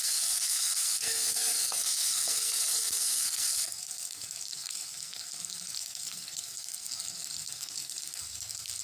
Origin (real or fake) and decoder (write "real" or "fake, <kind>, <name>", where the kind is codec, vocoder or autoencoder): fake, codec, SNAC